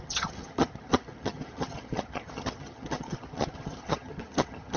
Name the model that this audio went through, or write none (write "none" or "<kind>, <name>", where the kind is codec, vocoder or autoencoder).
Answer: vocoder, HiFi-GAN